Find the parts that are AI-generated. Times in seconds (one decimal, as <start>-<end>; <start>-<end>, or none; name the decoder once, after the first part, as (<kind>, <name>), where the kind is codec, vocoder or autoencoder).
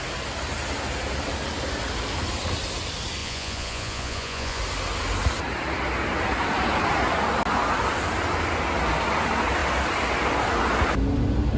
3.2-4.6 (vocoder, Vocos)